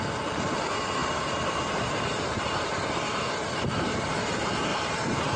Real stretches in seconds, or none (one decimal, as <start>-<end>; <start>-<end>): 0.0-1.0; 4.1-4.7